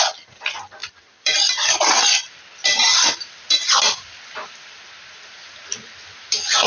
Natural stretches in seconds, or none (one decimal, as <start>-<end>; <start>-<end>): 0.0-0.8; 4.8-6.7